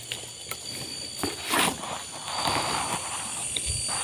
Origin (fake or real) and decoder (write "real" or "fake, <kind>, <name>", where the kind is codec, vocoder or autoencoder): real